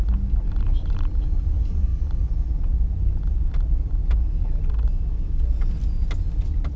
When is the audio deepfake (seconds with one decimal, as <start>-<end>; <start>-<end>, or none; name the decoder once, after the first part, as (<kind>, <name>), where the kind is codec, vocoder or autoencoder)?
none